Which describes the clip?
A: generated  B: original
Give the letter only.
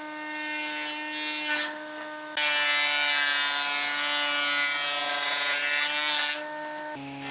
B